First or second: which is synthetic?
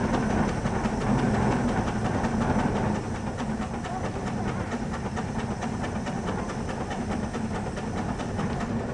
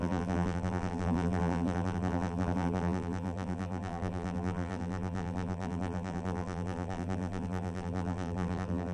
second